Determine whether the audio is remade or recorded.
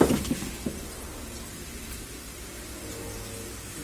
recorded